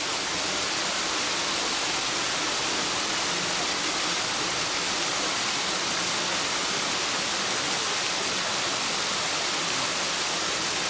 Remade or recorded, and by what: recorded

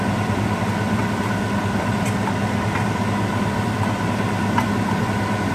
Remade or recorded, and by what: recorded